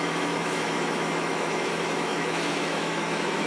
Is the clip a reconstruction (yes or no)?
yes